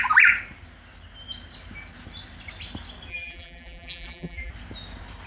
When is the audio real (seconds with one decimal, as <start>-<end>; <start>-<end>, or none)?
0.0-3.1; 4.5-5.3